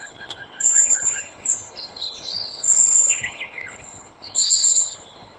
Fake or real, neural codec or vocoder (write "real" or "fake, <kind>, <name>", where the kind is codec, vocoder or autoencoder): fake, codec, HILCodec